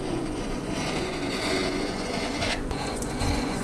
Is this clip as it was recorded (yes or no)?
no